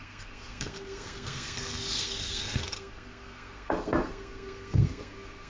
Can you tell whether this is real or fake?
fake